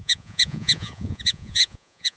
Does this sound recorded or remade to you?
remade